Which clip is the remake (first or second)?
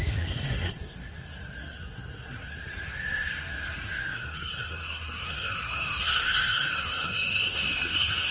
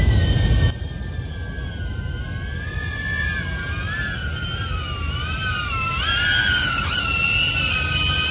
first